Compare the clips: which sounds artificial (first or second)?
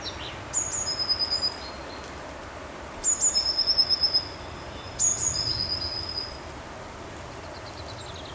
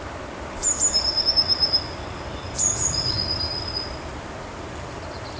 second